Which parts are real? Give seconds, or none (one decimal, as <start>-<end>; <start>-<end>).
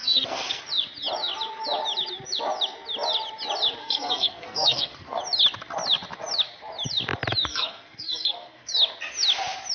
0.6-3.8; 5.2-7.5; 8.7-9.7